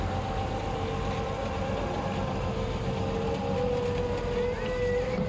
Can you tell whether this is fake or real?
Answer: real